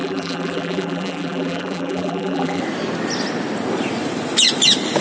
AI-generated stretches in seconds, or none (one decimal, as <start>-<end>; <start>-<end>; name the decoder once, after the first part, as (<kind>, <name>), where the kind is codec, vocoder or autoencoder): 0.0-2.6 (vocoder, BigVGAN v2)